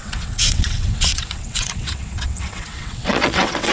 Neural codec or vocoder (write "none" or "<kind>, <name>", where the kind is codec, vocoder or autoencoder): vocoder, WaveNeXt